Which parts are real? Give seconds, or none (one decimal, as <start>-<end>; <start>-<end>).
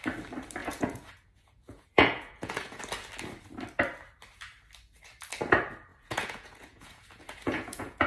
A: 0.0-0.6; 2.8-5.9